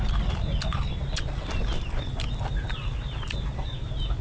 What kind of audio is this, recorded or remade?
recorded